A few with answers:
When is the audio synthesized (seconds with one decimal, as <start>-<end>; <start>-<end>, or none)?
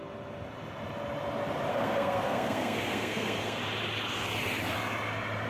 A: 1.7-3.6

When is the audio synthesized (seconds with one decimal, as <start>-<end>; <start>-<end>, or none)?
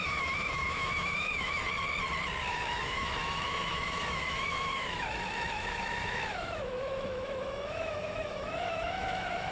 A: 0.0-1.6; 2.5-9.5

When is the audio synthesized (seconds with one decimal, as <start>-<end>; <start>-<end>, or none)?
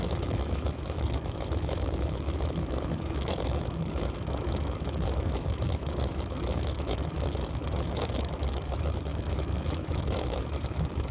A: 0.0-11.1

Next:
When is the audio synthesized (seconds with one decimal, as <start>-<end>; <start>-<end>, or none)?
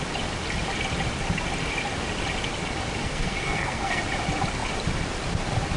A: 3.0-4.0